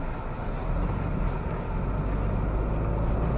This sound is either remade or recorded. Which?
recorded